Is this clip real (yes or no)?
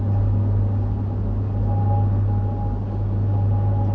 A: yes